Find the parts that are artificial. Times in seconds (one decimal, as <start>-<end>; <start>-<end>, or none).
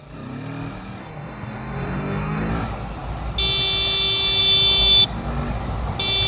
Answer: 1.0-2.5